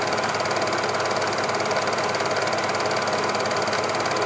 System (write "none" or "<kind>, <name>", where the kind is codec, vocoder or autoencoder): none